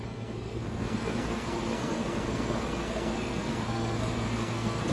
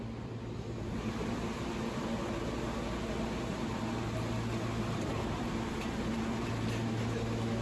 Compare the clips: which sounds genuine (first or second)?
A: second